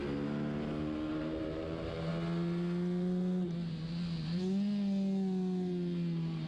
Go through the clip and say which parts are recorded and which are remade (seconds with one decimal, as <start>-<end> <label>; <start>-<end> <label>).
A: 0.0-1.1 recorded; 1.1-2.1 remade; 2.1-6.5 recorded